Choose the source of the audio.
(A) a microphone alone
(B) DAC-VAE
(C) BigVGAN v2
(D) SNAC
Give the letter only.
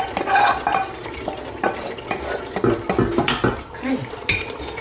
A